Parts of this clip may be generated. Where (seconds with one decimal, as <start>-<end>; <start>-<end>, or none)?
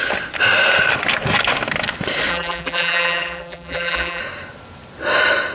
2.3-4.2